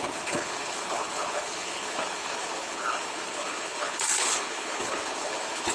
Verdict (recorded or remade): remade